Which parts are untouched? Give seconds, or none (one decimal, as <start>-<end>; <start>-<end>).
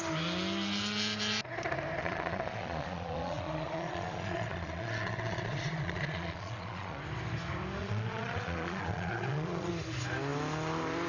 0.0-2.0; 7.0-7.8; 9.7-11.1